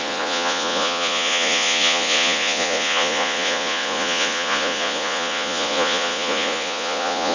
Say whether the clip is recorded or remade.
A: remade